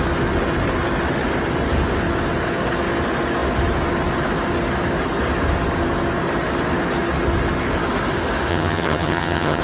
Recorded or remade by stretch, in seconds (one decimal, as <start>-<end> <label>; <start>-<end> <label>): 0.0-8.5 recorded; 8.5-9.6 remade